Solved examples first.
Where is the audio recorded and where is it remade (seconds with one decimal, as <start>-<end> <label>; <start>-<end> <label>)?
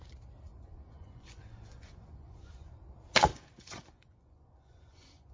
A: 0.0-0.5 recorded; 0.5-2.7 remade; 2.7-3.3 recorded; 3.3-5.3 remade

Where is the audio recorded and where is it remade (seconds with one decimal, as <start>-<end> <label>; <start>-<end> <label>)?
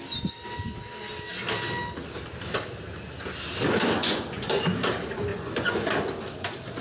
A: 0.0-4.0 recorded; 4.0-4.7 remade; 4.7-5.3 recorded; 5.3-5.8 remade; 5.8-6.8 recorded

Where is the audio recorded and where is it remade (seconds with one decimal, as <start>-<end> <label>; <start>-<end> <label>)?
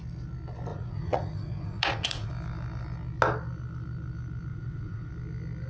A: 0.0-0.7 recorded; 0.7-2.3 remade; 2.3-4.5 recorded; 4.5-5.1 remade; 5.1-5.7 recorded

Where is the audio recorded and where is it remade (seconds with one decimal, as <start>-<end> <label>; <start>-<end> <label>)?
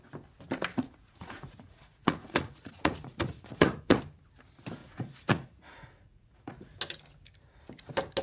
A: 0.0-0.7 recorded; 0.7-4.0 remade; 4.0-4.8 recorded; 4.8-6.5 remade; 6.5-8.2 recorded